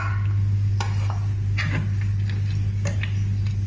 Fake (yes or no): no